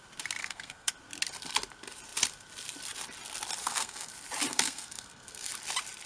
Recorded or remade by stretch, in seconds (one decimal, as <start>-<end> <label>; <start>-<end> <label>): 0.0-0.4 recorded; 0.4-0.9 remade; 0.9-3.6 recorded; 3.6-4.1 remade; 4.1-4.5 recorded; 4.5-5.5 remade; 5.5-6.1 recorded